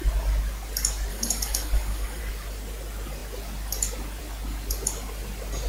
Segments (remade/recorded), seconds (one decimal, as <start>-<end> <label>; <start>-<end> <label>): 0.0-1.1 recorded; 1.1-2.2 remade; 2.2-5.7 recorded